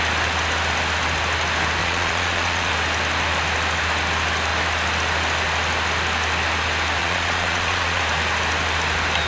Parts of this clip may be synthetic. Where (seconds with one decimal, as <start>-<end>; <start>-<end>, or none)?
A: 1.8-2.7; 7.0-8.0